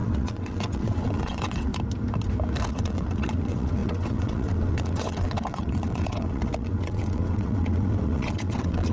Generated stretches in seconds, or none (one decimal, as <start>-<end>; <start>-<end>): 0.0-1.7; 2.7-8.9